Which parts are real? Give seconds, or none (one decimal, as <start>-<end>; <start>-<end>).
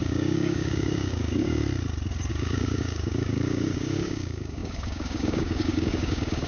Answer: 1.6-2.3